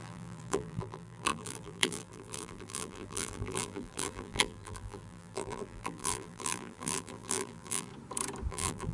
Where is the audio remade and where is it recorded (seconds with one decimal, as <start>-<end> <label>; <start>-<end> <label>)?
0.0-7.9 remade; 7.9-8.5 recorded; 8.5-8.9 remade